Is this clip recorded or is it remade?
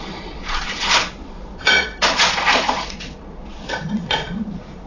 remade